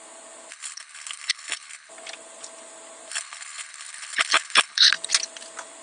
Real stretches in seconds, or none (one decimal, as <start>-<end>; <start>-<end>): 0.0-0.5; 1.9-3.1; 4.9-5.8